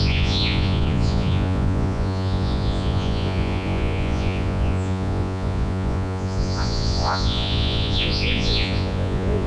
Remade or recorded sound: remade